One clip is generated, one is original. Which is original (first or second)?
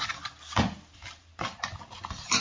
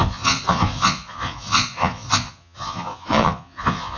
first